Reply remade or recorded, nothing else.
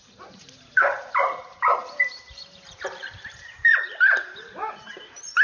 remade